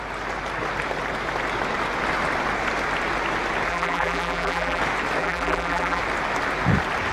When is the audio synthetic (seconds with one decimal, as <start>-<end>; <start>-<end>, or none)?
3.7-4.8; 5.2-6.0